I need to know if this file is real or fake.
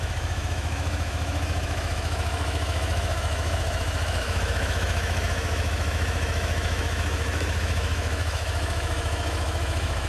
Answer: fake